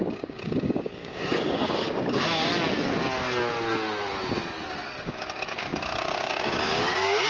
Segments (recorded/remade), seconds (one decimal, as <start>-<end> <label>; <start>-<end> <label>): 0.0-2.5 remade; 2.5-5.0 recorded; 5.0-7.3 remade